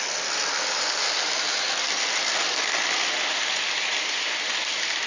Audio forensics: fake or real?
real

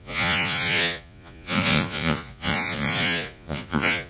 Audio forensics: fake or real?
fake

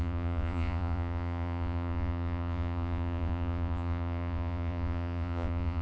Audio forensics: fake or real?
fake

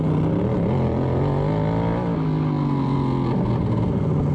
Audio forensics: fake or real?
real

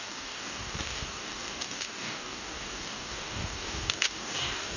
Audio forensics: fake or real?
fake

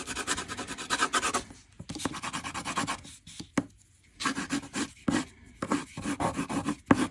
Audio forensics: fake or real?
real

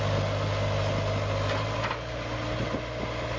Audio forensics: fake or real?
real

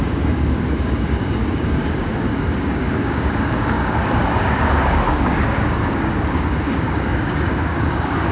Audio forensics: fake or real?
fake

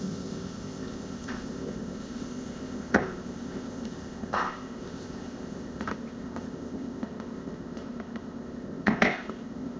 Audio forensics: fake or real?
fake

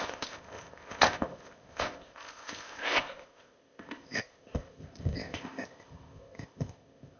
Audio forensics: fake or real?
fake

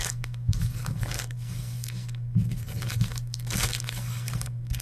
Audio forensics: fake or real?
fake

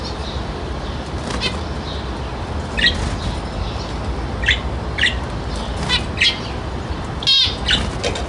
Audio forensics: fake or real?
real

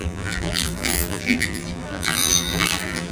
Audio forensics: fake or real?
fake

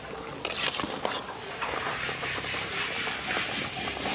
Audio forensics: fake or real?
real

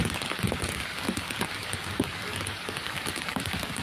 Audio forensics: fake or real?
fake